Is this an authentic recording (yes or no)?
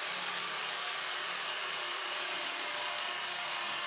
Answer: no